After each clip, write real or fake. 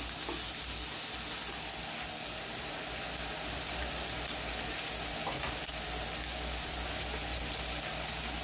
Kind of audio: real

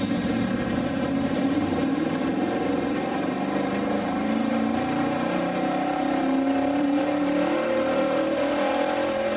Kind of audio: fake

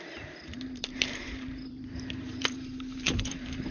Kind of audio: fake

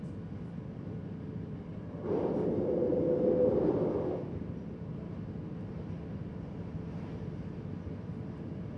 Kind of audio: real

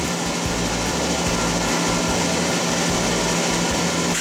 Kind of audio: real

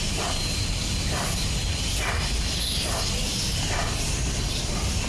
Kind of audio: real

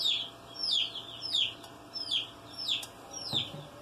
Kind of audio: real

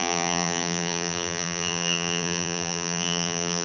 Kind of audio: fake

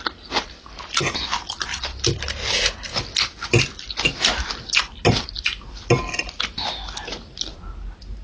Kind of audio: real